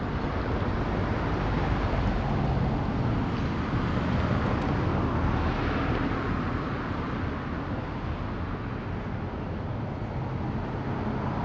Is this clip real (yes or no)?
yes